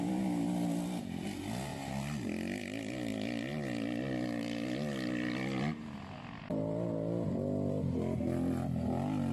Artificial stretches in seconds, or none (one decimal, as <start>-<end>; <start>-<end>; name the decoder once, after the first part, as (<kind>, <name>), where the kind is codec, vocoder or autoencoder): none